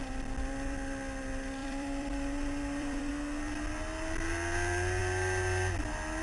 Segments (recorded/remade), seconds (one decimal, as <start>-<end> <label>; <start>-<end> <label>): 0.0-1.6 recorded; 1.6-3.1 remade; 3.1-6.2 recorded